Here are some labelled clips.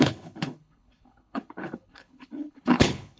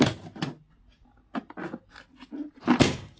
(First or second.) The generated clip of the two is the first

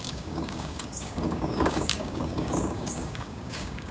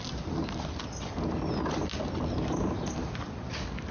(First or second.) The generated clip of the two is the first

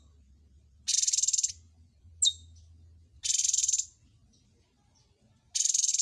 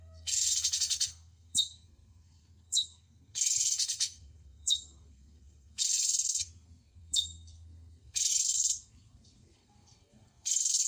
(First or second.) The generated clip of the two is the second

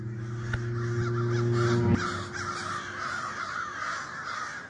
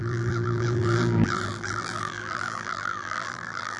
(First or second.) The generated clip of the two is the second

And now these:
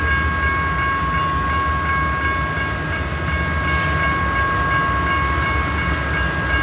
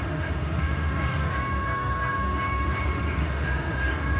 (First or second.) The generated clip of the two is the second